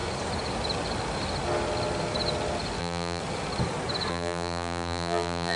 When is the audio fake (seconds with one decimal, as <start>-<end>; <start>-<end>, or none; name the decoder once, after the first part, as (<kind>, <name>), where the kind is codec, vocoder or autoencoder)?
2.8-3.2 (vocoder, BigVGAN v2); 4.1-5.6